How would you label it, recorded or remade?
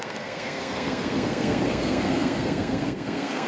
remade